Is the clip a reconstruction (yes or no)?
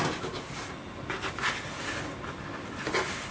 no